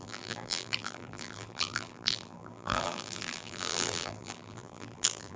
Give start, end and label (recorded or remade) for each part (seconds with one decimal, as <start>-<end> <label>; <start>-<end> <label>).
0.0-5.4 remade

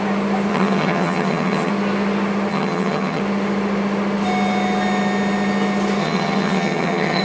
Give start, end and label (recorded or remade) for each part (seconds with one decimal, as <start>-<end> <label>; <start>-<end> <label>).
0.0-0.5 recorded; 0.5-1.7 remade; 1.7-2.5 recorded; 2.5-3.2 remade; 3.2-6.0 recorded; 6.0-7.2 remade

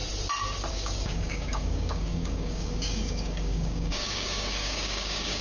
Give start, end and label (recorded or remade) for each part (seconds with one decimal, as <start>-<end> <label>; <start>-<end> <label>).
0.0-0.7 recorded; 0.7-5.4 remade

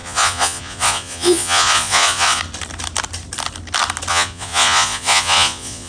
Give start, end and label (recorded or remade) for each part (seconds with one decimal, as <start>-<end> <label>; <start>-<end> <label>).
0.0-2.4 remade; 2.4-4.1 recorded; 4.1-5.9 remade

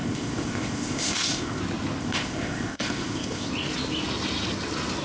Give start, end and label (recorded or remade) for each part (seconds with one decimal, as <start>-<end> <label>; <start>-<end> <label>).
0.0-1.6 remade; 1.6-2.0 recorded; 2.0-3.5 remade; 3.5-5.0 recorded

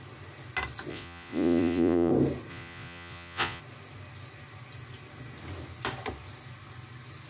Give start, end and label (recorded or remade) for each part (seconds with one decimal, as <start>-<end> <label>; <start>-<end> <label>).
0.0-0.9 recorded; 0.9-2.1 remade; 2.1-2.5 recorded; 2.5-3.6 remade; 3.6-7.3 recorded